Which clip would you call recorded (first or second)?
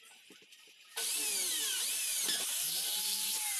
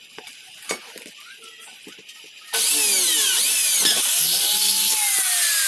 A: second